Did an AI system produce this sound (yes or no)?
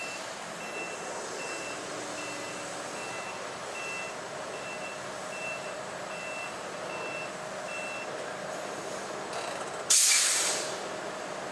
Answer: no